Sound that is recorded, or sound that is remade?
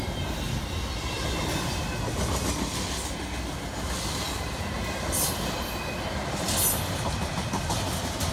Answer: recorded